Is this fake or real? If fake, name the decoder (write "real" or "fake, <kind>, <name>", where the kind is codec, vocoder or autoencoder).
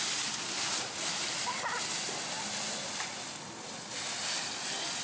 real